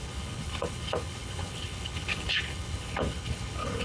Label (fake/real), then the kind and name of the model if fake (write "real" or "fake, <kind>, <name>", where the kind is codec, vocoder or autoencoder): fake, codec, HILCodec